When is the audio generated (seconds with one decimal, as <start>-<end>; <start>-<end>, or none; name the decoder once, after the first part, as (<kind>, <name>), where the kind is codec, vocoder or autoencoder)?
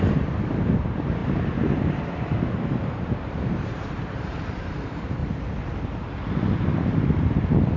0.0-5.2 (vocoder, BigVGAN v2)